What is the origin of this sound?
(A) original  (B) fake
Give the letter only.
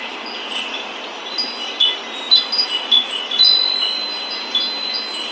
A